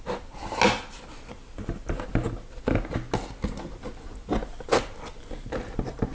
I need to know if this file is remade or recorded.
recorded